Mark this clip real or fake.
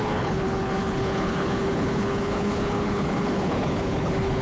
fake